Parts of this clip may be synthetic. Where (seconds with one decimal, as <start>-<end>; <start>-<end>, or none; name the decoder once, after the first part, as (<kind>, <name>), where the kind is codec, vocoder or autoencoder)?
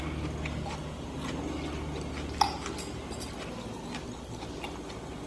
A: none